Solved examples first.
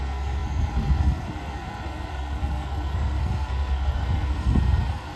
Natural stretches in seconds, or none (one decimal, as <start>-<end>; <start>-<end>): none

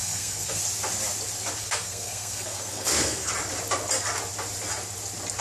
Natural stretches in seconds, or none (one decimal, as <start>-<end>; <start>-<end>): 0.6-1.6; 3.3-5.4

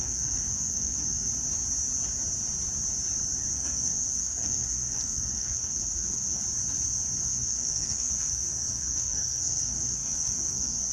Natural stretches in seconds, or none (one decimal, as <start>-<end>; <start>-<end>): 1.3-3.5; 6.4-7.2

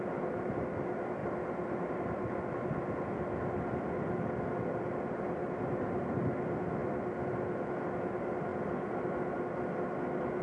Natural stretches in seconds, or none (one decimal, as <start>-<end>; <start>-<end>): 0.0-10.4

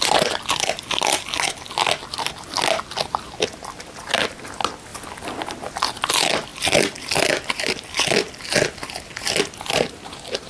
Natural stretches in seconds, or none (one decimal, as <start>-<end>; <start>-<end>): 0.0-10.5

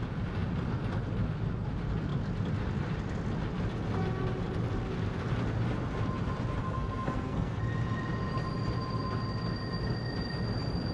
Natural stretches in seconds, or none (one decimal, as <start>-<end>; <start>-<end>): 0.0-6.6; 7.6-10.9

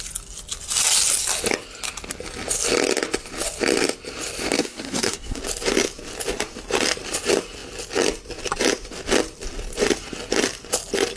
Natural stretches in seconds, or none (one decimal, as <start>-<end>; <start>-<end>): 0.0-4.6; 5.4-11.2

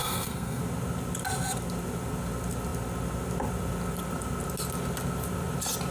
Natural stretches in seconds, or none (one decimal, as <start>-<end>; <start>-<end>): 0.6-5.9